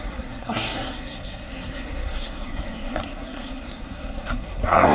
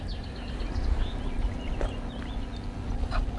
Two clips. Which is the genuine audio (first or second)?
second